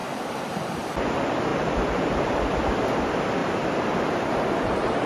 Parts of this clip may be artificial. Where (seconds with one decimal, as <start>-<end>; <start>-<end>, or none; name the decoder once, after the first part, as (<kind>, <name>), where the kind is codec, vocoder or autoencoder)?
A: 0.0-0.8 (vocoder, BigVGAN v2); 1.5-2.3; 3.4-5.1